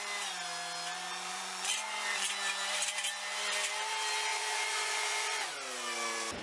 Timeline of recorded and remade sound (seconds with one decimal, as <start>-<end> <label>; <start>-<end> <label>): 0.0-1.3 recorded; 1.3-2.3 remade; 2.3-4.3 recorded; 4.3-5.5 remade; 5.5-6.4 recorded